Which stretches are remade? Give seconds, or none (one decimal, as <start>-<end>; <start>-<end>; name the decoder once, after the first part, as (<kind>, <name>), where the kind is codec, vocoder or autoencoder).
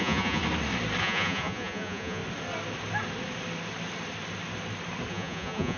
0.0-0.4 (vocoder, Vocos); 1.0-2.2; 5.1-5.8